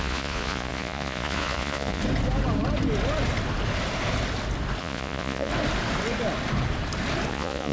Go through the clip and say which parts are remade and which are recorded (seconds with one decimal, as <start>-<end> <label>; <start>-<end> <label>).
0.0-2.0 remade; 2.0-4.8 recorded; 4.8-5.5 remade; 5.5-7.3 recorded; 7.3-7.7 remade

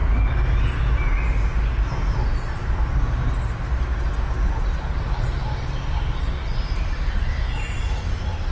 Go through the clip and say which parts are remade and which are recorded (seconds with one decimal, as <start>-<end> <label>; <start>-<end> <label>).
0.0-8.5 recorded

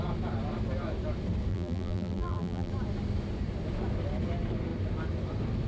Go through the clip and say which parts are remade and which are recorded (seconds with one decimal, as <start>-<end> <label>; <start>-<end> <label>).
0.0-1.5 recorded; 1.5-2.7 remade; 2.7-5.7 recorded